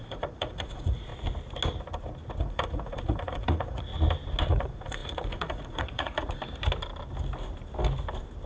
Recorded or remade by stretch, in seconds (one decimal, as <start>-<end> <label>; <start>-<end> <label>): 0.0-1.1 remade; 1.1-2.4 recorded; 2.4-3.9 remade; 3.9-4.5 recorded; 4.5-6.4 remade; 6.4-8.5 recorded